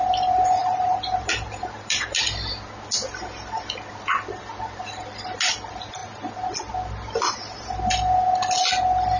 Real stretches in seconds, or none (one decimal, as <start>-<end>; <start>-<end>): 0.0-0.6; 2.2-9.2